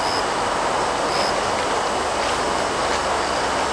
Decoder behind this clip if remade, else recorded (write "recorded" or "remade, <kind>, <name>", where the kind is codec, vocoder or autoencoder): recorded